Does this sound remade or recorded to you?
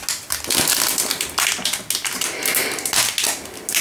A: recorded